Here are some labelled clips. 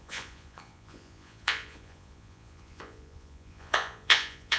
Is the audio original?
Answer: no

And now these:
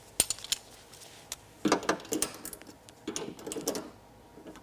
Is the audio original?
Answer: yes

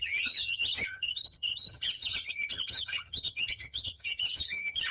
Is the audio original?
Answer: no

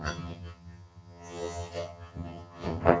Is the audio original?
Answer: no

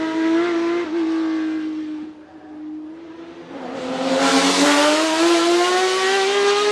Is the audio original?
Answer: yes